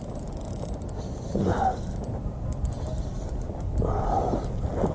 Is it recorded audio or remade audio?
recorded